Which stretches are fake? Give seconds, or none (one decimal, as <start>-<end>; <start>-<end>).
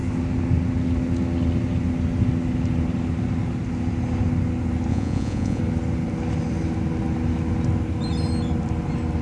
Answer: 4.9-5.6